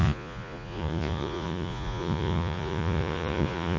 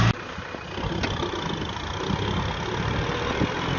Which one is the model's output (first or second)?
first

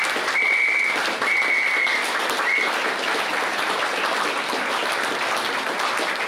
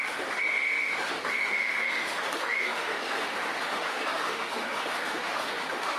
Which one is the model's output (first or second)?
second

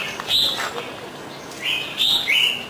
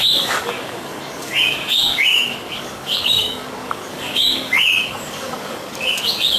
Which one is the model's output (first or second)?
second